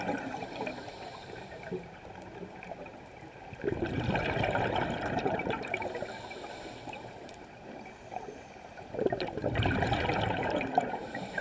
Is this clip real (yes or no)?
no